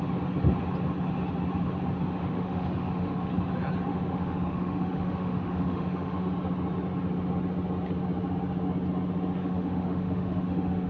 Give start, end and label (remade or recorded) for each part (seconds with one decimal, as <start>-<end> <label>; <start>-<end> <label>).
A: 0.0-2.2 recorded; 2.2-3.3 remade; 3.3-3.9 recorded; 3.9-6.3 remade; 6.3-9.4 recorded; 9.4-10.9 remade

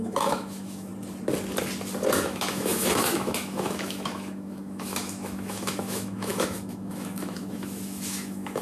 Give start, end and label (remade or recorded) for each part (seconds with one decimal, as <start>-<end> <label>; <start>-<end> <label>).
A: 0.0-0.9 remade; 0.9-2.1 recorded; 2.1-8.6 remade

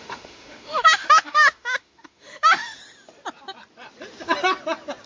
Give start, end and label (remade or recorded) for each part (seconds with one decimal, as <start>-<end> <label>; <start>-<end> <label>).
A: 0.0-2.8 remade; 2.8-5.1 recorded

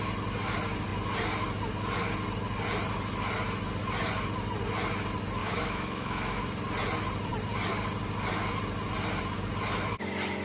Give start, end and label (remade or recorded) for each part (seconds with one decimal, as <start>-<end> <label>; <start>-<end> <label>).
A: 0.0-5.4 recorded; 5.4-6.4 remade; 6.4-10.4 recorded

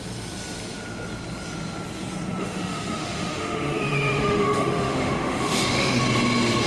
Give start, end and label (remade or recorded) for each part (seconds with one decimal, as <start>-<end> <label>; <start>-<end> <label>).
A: 0.0-2.4 recorded; 2.4-6.0 remade; 6.0-6.7 recorded